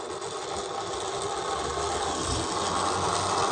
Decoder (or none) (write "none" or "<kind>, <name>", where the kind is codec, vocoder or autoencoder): none